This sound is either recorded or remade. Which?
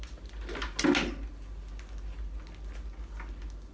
recorded